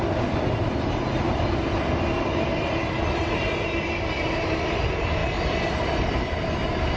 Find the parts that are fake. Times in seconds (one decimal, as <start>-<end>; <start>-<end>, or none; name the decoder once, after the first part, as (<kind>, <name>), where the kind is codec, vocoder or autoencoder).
none